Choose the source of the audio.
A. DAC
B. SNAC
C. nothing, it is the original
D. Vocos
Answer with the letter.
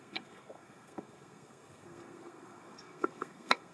B